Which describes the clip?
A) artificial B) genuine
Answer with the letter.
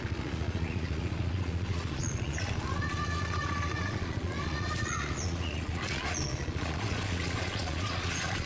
A